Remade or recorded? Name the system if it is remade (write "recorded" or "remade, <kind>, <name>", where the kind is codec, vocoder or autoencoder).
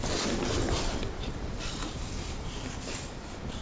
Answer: recorded